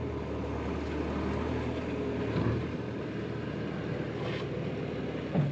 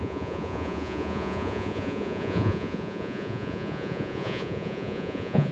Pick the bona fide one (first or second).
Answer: first